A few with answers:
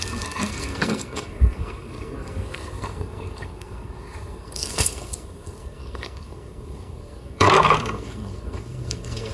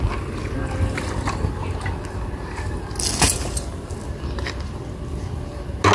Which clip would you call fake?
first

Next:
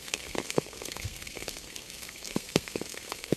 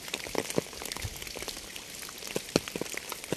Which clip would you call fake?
first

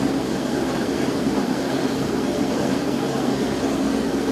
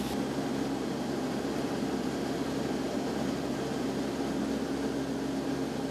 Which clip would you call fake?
first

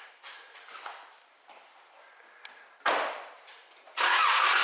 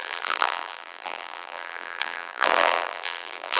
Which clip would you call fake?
second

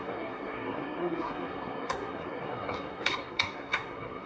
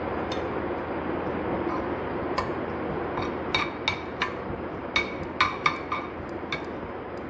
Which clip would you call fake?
first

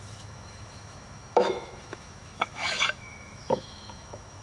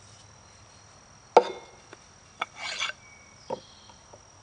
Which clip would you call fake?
first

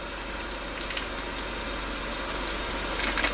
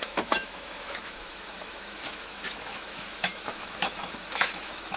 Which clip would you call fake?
second